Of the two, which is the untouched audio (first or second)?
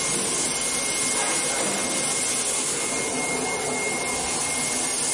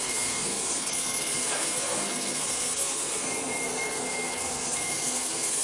first